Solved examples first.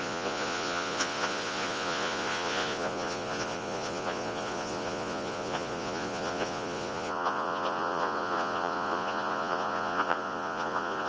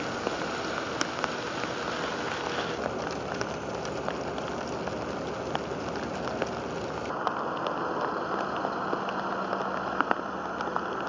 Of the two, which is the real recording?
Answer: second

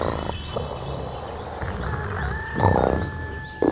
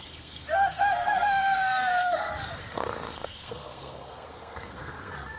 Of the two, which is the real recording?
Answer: first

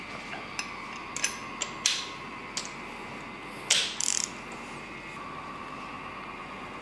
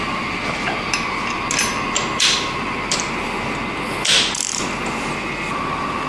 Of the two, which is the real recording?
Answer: first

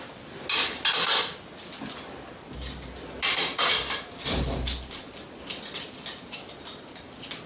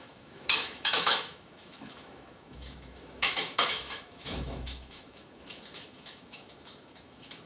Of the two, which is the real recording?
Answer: first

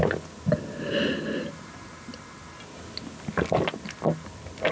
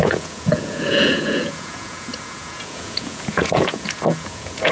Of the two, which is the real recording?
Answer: first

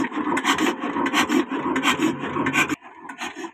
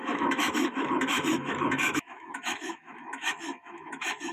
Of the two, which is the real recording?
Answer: first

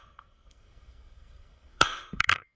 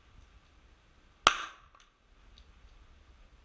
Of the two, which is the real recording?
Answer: second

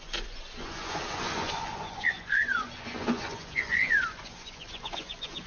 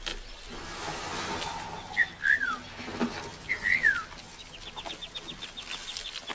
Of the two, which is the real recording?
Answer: second